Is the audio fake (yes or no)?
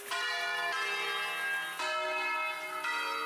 no